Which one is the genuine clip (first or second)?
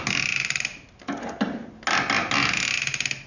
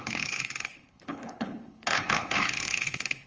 first